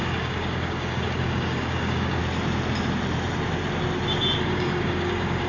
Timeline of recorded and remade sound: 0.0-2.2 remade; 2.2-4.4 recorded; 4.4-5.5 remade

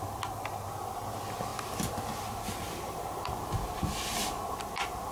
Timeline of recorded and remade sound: 0.0-5.1 recorded

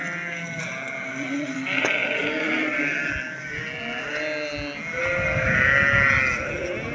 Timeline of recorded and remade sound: 0.0-6.9 recorded

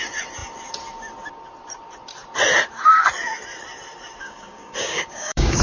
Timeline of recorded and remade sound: 0.0-4.2 recorded; 4.2-5.6 remade

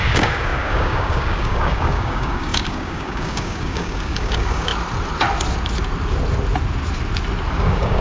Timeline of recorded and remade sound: 0.0-4.7 remade; 4.7-7.5 recorded; 7.5-8.0 remade

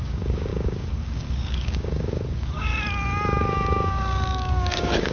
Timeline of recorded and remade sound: 0.0-2.7 remade; 2.7-3.4 recorded; 3.4-5.1 remade

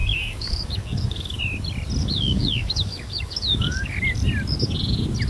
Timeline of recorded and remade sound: 0.0-1.4 remade; 1.4-2.0 recorded; 2.0-3.9 remade; 3.9-5.3 recorded